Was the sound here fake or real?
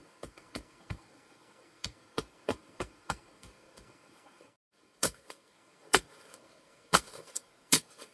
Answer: fake